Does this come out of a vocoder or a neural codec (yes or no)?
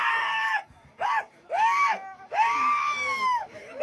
yes